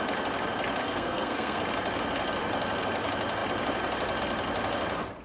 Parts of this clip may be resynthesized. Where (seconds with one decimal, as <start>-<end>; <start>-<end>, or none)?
0.8-1.6